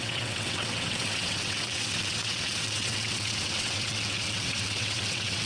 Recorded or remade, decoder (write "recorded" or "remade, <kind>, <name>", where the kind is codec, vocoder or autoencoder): remade, vocoder, WaveNeXt